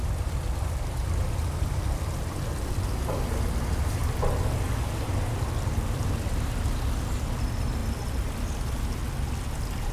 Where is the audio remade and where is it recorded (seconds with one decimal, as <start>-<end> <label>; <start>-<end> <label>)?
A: 0.0-9.9 recorded